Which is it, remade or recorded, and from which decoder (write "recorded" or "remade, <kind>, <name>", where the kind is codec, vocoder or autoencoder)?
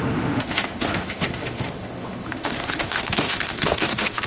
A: remade, autoencoder, DAC-VAE